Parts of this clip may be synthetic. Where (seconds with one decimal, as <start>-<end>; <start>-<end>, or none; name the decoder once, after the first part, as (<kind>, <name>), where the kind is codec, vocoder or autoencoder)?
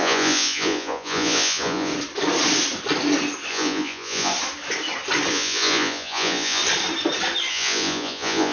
0.0-1.9 (vocoder, Vocos); 3.5-4.3; 5.3-6.6; 7.5-8.5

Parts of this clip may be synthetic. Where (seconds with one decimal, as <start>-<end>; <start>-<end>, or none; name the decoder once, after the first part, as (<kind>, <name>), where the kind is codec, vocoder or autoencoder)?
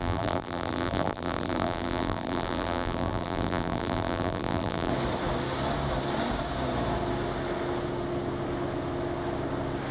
0.0-4.9 (vocoder, BigVGAN v2)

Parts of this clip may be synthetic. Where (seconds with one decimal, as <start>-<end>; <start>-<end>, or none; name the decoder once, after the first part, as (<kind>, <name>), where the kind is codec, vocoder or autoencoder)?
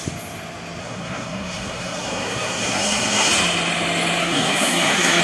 0.8-3.3 (codec, SNAC); 4.2-5.2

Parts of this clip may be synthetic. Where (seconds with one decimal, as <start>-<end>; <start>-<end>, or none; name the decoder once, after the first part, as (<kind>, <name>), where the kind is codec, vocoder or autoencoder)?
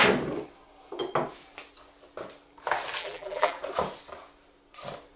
3.0-3.6 (vocoder, BigVGAN v2)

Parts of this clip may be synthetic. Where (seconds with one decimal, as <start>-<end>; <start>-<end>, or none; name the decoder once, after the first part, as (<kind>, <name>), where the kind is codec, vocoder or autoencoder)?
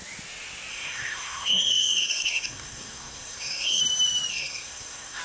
0.7-3.8 (codec, SNAC); 4.3-5.2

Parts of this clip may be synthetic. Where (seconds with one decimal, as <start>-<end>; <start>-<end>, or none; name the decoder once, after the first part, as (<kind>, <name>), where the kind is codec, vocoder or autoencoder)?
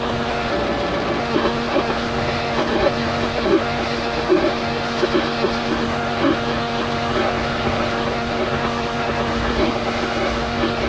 0.0-0.5 (codec, SNAC); 1.2-10.9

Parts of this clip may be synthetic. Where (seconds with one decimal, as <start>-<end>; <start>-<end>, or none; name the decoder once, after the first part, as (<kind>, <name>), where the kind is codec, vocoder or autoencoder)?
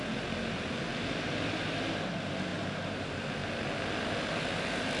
none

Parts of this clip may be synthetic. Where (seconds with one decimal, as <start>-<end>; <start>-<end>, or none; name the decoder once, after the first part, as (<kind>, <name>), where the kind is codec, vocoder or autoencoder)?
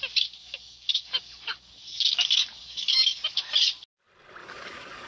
0.4-3.5 (codec, DAC); 4.4-5.1